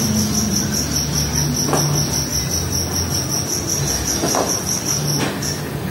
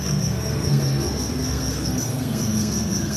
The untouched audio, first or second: first